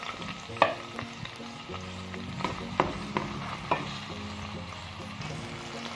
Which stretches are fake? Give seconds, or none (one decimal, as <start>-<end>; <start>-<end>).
none